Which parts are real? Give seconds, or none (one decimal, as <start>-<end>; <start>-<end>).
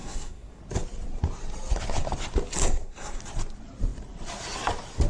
0.6-2.6; 3.2-5.1